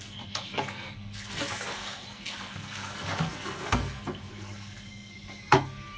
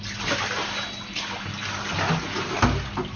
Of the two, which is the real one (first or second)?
second